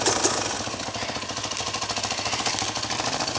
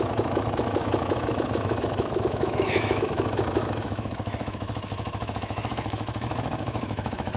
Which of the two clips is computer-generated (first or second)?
second